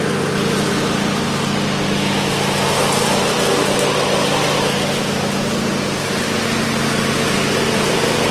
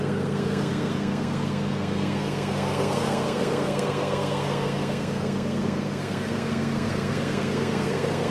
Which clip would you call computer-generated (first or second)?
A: second